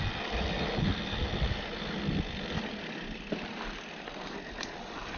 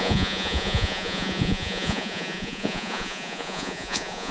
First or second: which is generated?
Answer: second